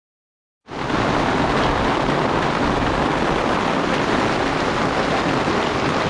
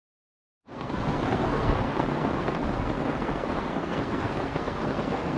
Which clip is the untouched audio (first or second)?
first